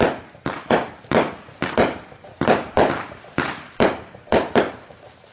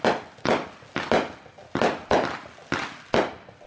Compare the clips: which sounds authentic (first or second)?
second